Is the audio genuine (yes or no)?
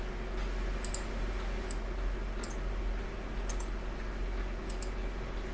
yes